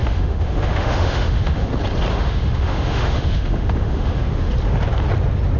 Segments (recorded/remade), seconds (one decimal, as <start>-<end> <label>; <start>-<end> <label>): 0.0-1.7 remade; 1.7-2.1 recorded; 2.1-4.5 remade; 4.5-5.6 recorded